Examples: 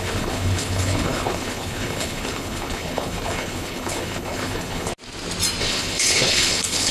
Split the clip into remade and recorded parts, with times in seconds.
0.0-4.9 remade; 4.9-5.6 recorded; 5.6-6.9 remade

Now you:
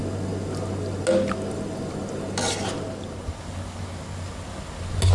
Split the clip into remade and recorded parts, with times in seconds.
0.0-5.1 recorded

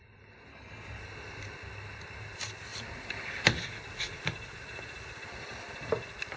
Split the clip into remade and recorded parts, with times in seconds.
0.0-0.5 recorded; 0.5-1.0 remade; 1.0-6.4 recorded

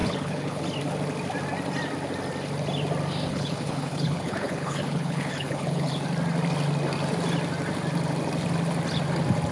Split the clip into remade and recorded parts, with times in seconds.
0.0-0.6 remade; 0.6-3.3 recorded; 3.3-5.9 remade; 5.9-9.5 recorded

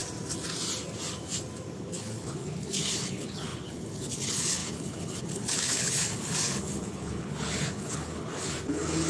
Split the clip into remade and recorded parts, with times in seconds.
0.0-1.8 recorded; 1.8-9.1 remade

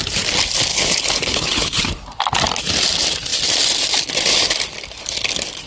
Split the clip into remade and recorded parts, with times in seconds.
0.0-0.7 recorded; 0.7-1.8 remade; 1.8-5.7 recorded

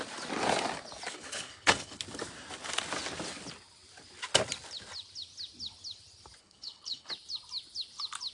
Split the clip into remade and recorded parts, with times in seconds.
0.0-1.1 recorded; 1.1-2.0 remade; 2.0-6.4 recorded; 6.4-7.1 remade; 7.1-8.3 recorded

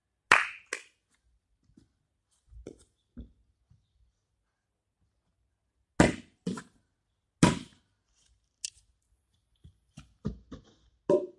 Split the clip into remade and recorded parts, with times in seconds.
0.0-11.4 recorded